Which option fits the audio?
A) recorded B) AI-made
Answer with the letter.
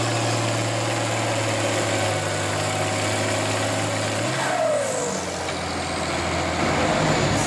A